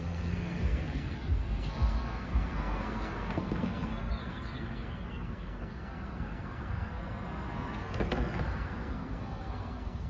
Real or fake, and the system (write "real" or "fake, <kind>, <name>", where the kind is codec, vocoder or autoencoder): fake, codec, SNAC